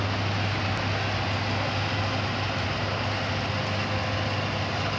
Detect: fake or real real